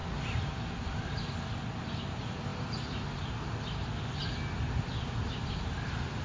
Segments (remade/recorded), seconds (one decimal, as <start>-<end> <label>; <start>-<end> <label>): 0.0-6.2 recorded